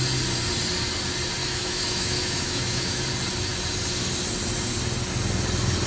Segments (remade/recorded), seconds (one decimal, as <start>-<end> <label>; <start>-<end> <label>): 0.0-1.4 recorded; 1.4-3.0 remade; 3.0-5.9 recorded